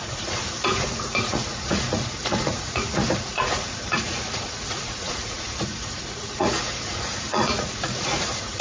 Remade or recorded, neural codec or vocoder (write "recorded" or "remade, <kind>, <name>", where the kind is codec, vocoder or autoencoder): remade, vocoder, Vocos